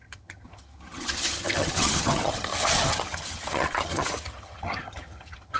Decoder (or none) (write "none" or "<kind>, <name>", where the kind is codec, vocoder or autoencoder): vocoder, HiFi-GAN